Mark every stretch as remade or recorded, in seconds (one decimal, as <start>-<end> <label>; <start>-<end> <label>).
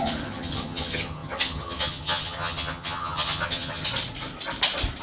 0.0-3.9 remade; 3.9-5.0 recorded